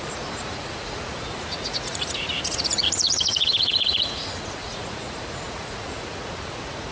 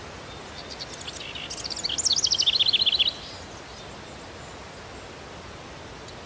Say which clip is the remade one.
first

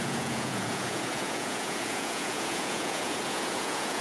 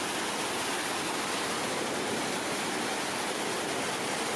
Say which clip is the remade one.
first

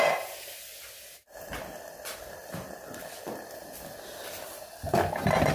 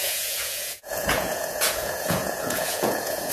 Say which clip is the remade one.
second